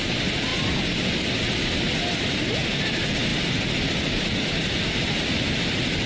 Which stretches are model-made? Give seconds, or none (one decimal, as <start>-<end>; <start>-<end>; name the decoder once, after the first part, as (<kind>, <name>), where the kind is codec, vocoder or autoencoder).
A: none